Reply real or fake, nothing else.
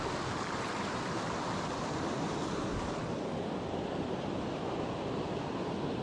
real